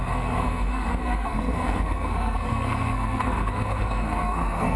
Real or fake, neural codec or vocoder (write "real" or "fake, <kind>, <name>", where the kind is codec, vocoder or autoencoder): fake, codec, SNAC